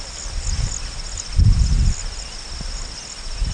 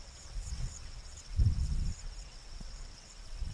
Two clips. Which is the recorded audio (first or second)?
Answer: first